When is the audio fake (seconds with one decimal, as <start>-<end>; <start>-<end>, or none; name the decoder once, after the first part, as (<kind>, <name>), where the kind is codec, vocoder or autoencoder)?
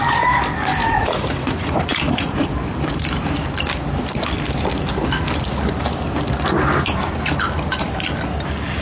0.8-2.5 (vocoder, Vocos)